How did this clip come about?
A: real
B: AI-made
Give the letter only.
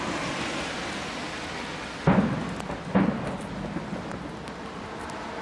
A